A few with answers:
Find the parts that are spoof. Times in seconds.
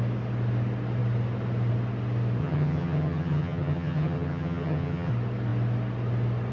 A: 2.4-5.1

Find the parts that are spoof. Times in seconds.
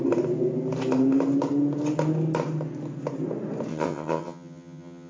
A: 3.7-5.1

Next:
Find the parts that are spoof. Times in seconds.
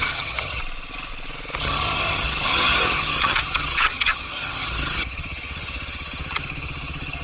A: 0.0-0.6; 1.6-7.2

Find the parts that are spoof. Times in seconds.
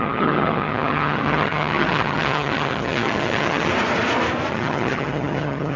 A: 0.0-3.7; 4.5-5.8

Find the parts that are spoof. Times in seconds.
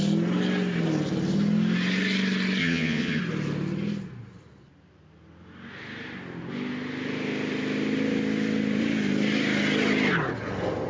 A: 2.6-3.2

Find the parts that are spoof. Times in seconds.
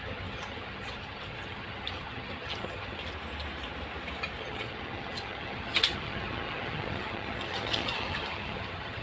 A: 0.0-3.0; 4.4-9.0